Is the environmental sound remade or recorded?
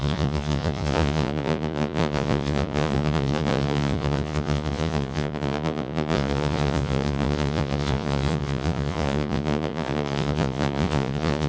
remade